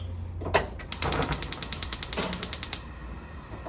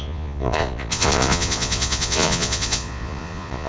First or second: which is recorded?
first